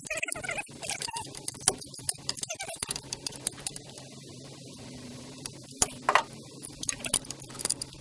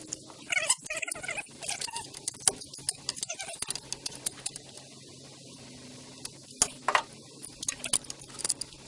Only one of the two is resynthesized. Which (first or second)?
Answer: first